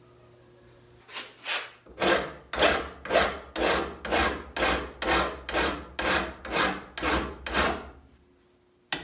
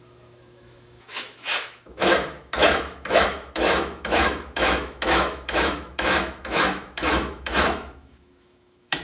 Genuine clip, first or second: first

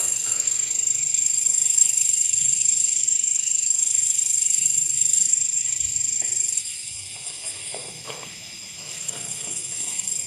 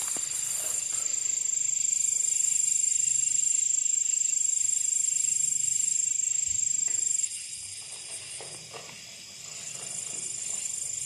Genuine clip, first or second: second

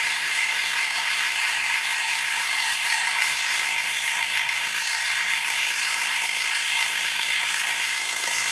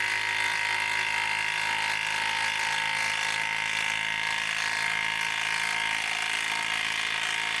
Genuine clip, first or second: second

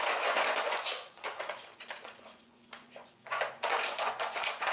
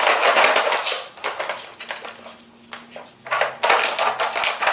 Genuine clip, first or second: second